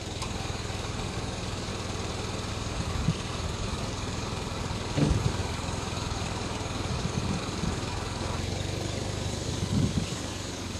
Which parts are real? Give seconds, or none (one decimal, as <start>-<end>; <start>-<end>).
1.7-2.5